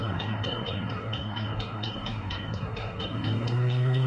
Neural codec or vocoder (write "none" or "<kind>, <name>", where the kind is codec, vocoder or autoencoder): codec, SNAC